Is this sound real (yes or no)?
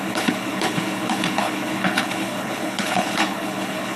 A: no